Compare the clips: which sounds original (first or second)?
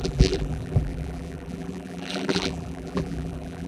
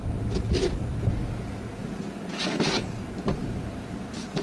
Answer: second